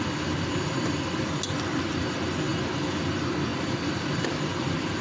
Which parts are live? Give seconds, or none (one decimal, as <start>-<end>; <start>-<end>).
0.0-3.5